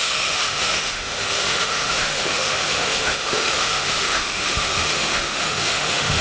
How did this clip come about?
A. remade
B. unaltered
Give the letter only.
A